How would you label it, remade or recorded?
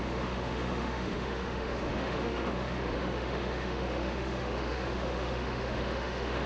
remade